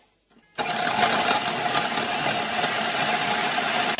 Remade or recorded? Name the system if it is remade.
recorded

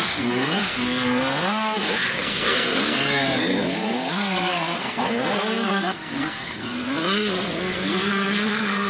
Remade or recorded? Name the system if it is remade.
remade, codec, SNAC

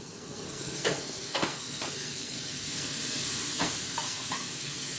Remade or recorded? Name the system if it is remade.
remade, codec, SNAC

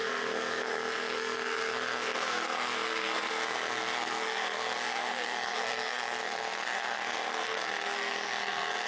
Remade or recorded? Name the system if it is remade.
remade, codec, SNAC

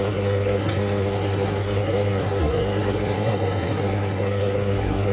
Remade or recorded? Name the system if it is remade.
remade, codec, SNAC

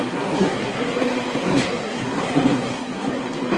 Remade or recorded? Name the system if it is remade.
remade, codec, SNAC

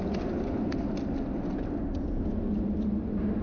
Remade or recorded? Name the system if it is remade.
recorded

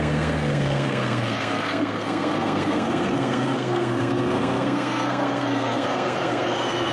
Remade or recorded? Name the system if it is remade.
remade, codec, SNAC